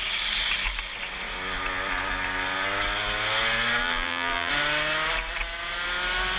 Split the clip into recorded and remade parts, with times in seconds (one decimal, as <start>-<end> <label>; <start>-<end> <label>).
0.0-3.8 recorded; 3.8-4.5 remade; 4.5-6.4 recorded